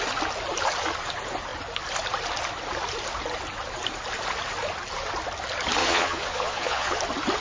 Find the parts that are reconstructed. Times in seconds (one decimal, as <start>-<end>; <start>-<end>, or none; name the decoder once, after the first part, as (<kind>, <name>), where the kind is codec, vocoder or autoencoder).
5.8-7.0 (vocoder, Vocos)